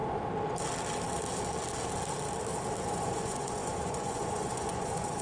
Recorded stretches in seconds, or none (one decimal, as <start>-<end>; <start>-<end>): 0.0-2.8